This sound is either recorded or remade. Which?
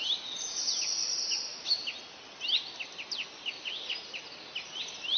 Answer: recorded